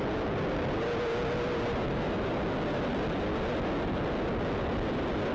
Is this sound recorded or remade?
recorded